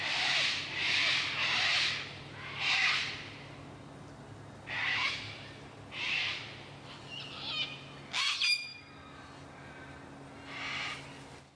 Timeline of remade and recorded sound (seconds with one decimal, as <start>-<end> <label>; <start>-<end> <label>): 0.0-11.6 recorded